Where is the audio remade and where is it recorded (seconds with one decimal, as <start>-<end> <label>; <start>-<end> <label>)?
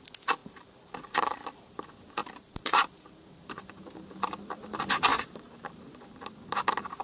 0.0-0.4 recorded; 0.4-1.7 remade; 1.7-2.2 recorded; 2.2-3.9 remade; 3.9-5.1 recorded; 5.1-5.9 remade; 5.9-7.0 recorded